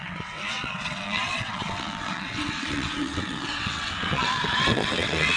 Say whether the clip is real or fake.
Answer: fake